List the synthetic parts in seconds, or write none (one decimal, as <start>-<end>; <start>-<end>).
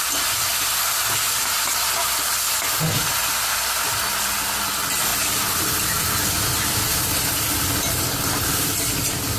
none